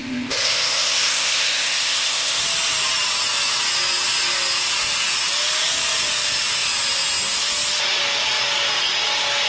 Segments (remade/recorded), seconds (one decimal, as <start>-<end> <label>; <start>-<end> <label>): 0.0-2.4 remade; 2.4-9.5 recorded